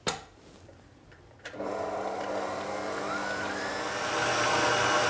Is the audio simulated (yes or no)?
no